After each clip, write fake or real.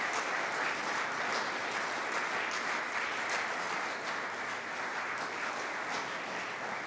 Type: real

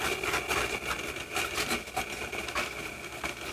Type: real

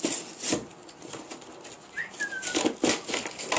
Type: real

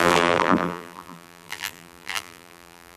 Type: fake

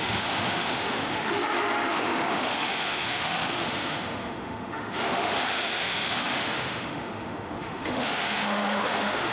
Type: fake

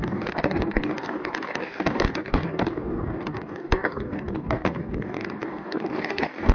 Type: fake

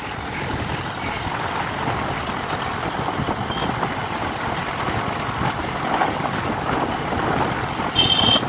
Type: real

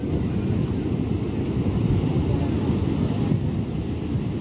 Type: real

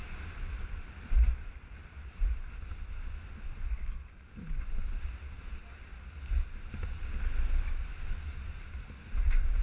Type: real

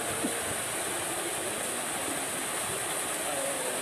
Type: real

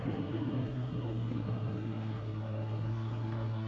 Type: fake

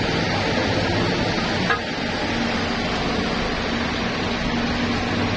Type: real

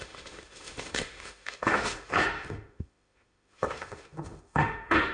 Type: fake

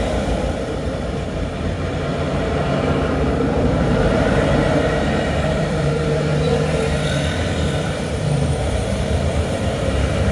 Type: fake